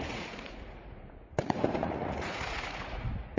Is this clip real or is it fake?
fake